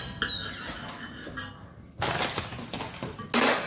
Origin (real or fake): real